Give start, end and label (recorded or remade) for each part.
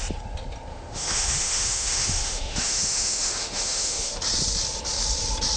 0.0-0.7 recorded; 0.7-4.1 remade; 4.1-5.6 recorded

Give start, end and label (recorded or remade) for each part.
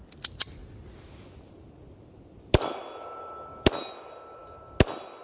0.0-0.6 recorded; 0.6-3.7 remade; 3.7-5.2 recorded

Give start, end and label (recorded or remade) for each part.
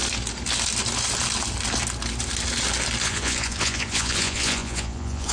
0.0-3.0 recorded; 3.0-5.3 remade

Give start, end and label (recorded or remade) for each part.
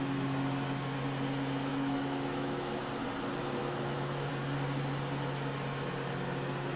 0.0-1.7 recorded; 1.7-2.8 remade; 2.8-3.6 recorded; 3.6-4.3 remade; 4.3-6.8 recorded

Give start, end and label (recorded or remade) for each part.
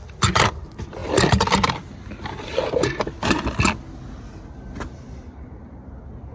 0.0-6.3 recorded